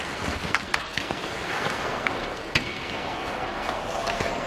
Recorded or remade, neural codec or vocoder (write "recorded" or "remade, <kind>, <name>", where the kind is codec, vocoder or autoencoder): remade, codec, SNAC